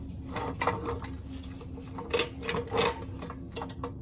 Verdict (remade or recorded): recorded